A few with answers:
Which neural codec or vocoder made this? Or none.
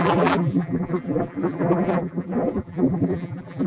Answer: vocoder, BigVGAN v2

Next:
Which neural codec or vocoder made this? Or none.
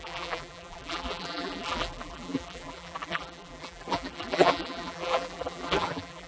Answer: vocoder, BigVGAN v2